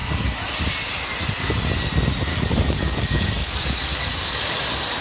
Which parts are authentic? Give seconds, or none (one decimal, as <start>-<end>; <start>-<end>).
0.0-2.3; 4.6-5.0